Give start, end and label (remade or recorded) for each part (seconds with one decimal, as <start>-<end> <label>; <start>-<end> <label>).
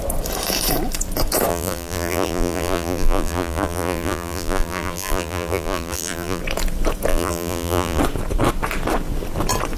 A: 0.0-1.5 recorded; 1.5-6.4 remade; 6.4-7.1 recorded; 7.1-8.0 remade; 8.0-9.8 recorded